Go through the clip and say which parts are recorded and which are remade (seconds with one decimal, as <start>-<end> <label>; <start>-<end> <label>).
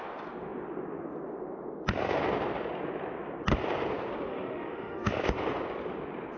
0.0-4.3 recorded; 4.3-5.1 remade; 5.1-6.4 recorded